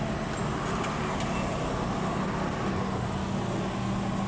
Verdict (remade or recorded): recorded